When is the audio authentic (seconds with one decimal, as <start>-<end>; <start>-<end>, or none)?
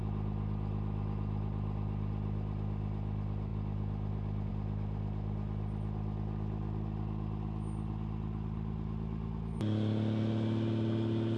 0.0-11.4